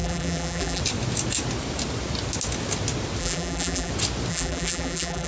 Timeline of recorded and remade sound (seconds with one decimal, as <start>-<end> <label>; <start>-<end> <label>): 0.0-0.8 remade; 0.8-3.2 recorded; 3.2-3.9 remade; 3.9-4.3 recorded; 4.3-5.3 remade